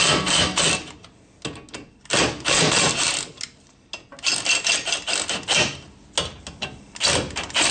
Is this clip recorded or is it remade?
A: recorded